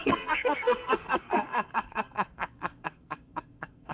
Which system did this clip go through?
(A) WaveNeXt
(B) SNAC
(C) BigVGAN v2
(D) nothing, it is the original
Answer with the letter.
B